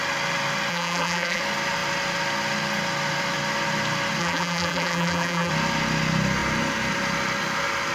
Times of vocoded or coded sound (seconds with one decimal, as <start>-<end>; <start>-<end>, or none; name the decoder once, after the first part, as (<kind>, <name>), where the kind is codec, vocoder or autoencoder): 0.7-1.4 (vocoder, BigVGAN v2); 4.2-5.5